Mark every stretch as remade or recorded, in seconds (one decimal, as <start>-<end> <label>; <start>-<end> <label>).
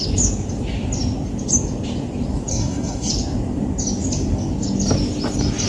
0.0-2.5 recorded; 2.5-3.1 remade; 3.1-5.7 recorded